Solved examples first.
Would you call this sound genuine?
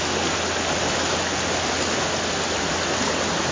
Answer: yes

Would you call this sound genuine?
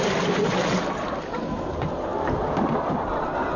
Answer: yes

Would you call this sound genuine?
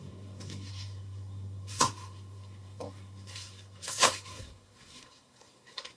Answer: no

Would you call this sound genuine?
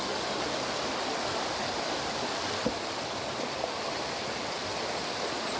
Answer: yes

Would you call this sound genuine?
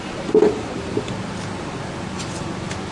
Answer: yes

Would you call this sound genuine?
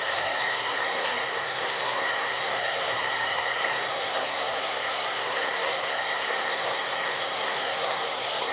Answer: no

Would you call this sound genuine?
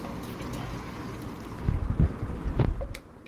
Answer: yes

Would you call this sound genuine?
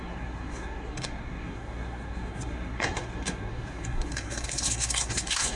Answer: no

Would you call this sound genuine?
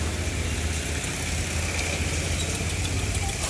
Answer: yes